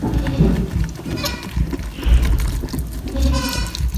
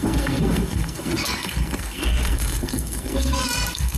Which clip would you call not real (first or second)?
second